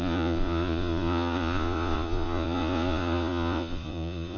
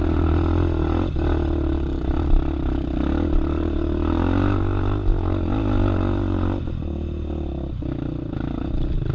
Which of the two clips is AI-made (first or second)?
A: first